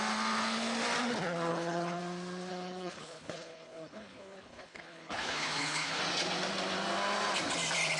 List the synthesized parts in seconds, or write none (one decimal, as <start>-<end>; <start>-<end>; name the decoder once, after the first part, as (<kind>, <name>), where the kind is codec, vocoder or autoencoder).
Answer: 1.5-2.0 (codec, HILCodec); 2.5-6.0